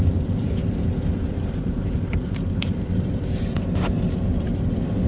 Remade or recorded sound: remade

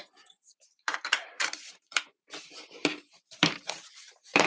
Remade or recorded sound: remade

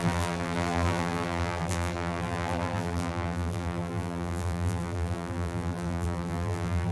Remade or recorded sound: remade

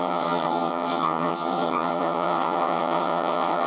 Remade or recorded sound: remade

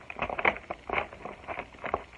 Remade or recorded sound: recorded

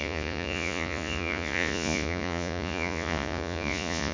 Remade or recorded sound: remade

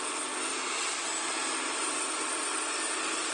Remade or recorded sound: recorded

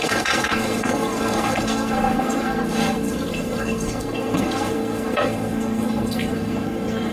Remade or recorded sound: remade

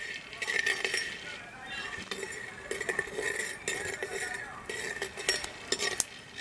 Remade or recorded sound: recorded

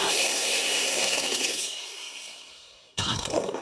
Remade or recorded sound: remade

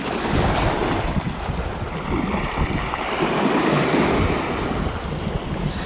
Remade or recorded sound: recorded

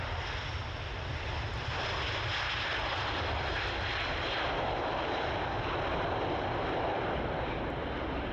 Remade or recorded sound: recorded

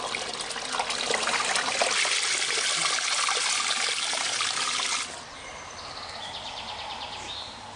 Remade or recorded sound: recorded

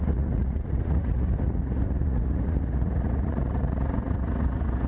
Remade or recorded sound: remade